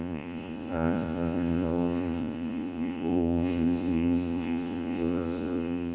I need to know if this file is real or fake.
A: fake